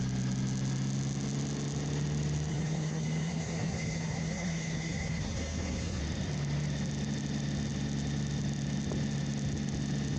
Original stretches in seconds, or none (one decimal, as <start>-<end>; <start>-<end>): 0.0-2.5; 6.0-10.2